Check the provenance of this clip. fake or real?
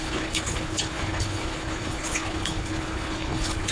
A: fake